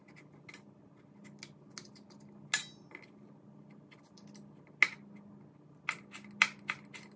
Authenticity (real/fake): real